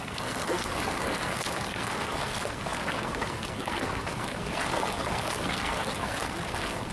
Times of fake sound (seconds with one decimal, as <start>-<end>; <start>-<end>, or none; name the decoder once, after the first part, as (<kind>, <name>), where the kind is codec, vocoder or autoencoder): 0.0-6.9 (codec, SNAC)